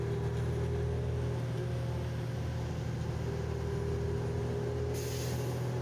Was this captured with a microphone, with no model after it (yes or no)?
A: yes